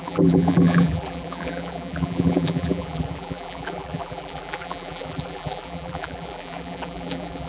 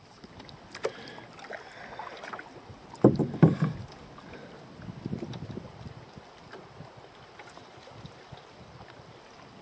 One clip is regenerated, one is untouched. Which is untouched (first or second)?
second